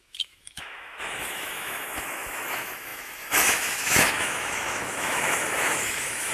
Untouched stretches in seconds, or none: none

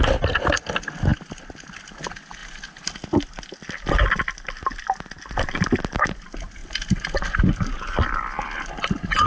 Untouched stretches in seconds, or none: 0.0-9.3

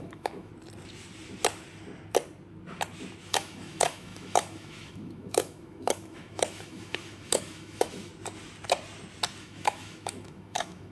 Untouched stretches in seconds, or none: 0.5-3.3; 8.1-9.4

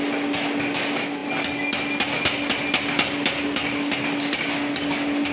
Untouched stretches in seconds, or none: 0.0-5.3

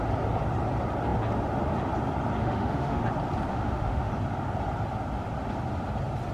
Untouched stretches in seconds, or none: 0.0-2.4; 3.0-3.5; 4.1-6.3